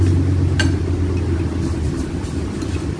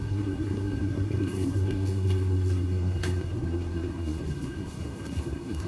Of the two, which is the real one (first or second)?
first